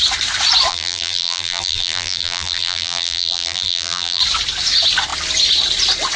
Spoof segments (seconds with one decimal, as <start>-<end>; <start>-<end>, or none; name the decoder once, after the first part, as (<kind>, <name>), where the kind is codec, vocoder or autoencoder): 0.7-4.2 (vocoder, BigVGAN v2)